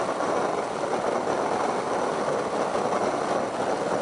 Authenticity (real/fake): real